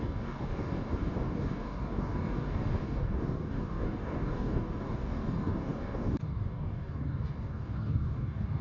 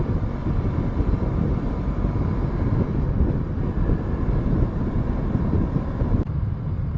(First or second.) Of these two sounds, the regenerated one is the first